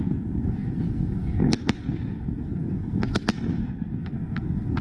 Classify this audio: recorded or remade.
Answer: remade